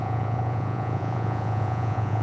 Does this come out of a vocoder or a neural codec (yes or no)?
yes